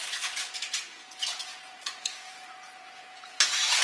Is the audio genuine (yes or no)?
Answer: no